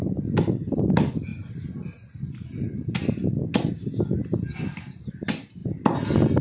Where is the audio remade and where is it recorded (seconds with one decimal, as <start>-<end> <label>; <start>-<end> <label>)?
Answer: 0.0-6.4 recorded